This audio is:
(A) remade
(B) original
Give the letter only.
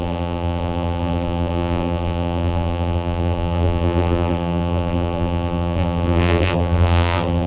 A